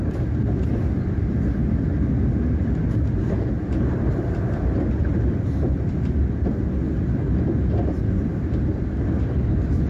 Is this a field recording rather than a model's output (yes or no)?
yes